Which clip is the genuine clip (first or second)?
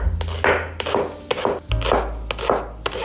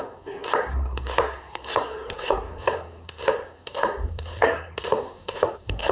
first